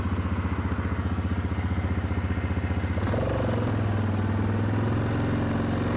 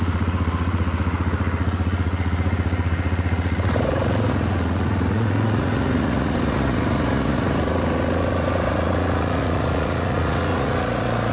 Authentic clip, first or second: first